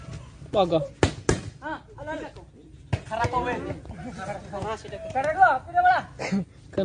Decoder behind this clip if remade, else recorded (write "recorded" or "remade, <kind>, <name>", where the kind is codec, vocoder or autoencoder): recorded